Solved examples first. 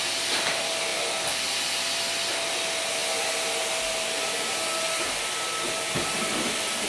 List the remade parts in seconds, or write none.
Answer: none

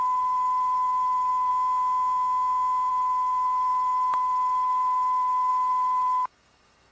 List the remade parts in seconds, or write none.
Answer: 0.0-1.5 (autoencoder, DAC-VAE); 2.9-6.9

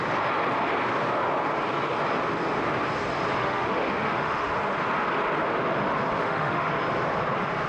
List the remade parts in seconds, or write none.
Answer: 3.4-4.5 (autoencoder, DAC-VAE); 6.2-6.7